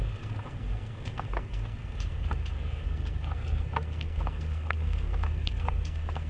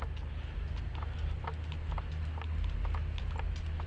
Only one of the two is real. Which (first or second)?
second